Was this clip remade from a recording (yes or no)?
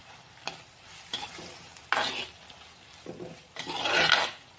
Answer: no